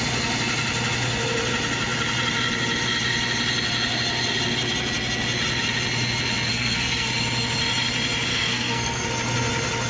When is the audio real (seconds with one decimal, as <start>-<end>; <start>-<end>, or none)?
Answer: 0.0-6.5; 7.1-8.3; 9.1-9.9